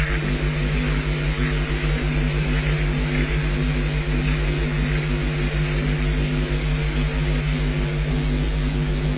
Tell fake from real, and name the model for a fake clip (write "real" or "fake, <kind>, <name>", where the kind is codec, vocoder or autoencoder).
real